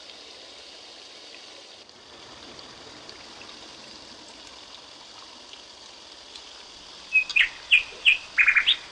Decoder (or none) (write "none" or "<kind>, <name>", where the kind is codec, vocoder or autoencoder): none